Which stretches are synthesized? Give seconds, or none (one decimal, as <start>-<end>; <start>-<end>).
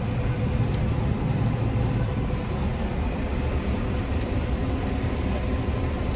none